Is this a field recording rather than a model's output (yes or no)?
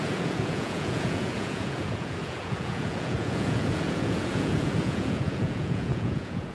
no